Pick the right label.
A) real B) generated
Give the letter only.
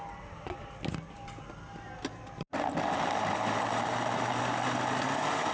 A